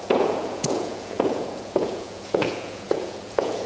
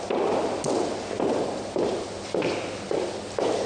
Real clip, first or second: second